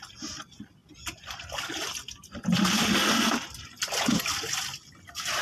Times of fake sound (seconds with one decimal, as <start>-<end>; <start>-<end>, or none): none